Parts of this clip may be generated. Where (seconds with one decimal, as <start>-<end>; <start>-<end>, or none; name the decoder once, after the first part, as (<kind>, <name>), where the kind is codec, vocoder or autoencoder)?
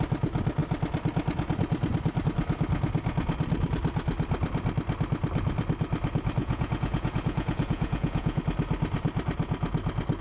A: 6.4-8.4 (vocoder, Vocos)